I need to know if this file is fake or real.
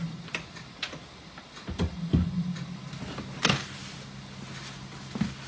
real